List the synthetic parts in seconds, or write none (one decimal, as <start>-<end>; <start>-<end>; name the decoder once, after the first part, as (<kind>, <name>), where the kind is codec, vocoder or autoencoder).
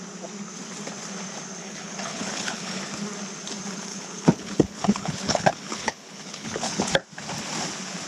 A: 1.6-2.8 (codec, HILCodec); 3.9-6.9